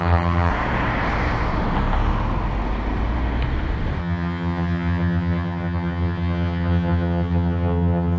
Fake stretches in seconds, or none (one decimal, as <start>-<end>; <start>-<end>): 0.0-0.5; 4.0-8.2